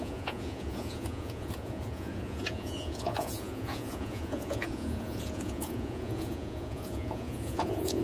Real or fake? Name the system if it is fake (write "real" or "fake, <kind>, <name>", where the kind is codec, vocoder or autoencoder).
fake, vocoder, Vocos